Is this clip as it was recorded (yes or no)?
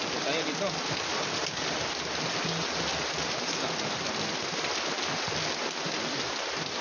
yes